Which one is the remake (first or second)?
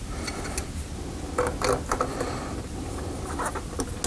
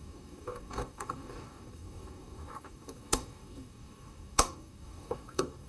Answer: second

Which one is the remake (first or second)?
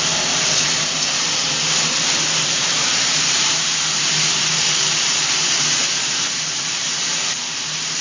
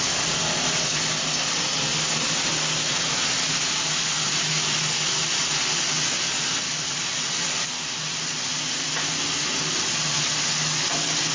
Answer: first